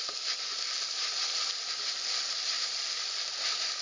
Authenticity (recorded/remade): recorded